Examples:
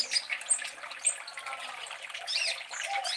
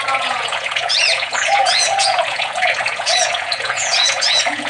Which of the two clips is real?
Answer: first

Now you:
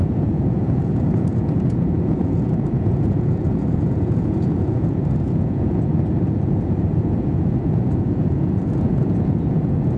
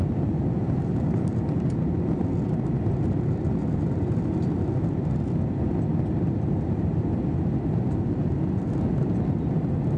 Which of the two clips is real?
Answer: second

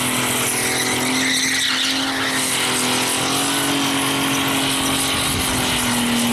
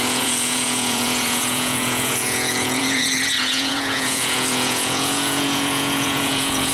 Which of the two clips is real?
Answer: first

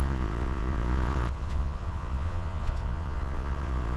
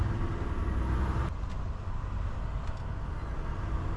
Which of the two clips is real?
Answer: second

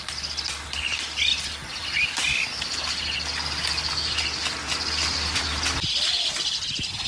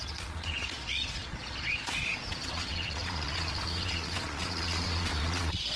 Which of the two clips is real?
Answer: first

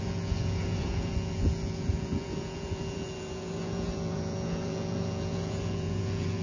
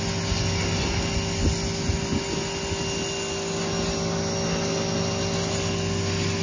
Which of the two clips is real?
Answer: second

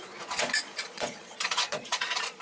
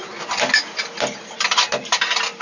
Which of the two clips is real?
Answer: second